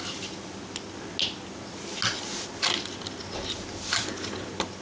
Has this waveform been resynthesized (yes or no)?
no